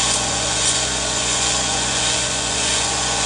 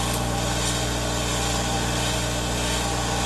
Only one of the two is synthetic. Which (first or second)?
first